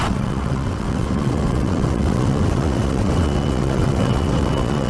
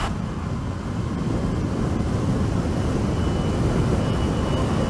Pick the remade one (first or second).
first